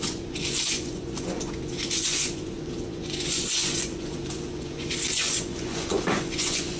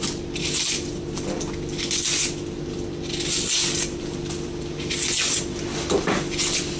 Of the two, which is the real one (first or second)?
second